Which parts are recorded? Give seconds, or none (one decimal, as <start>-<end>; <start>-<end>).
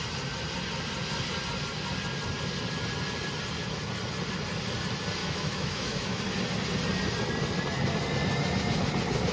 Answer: 0.0-5.2; 6.2-9.3